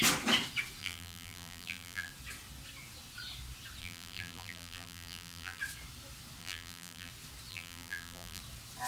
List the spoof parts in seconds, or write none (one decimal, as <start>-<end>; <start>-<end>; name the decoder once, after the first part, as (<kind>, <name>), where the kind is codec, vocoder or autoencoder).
0.8-2.1 (vocoder, BigVGAN v2); 3.8-5.6; 6.4-7.1; 7.5-8.4